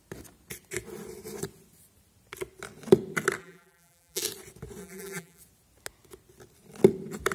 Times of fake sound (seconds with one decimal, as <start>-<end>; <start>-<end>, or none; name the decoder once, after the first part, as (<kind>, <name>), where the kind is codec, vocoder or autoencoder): 3.4-4.2 (vocoder, BigVGAN v2); 4.8-5.4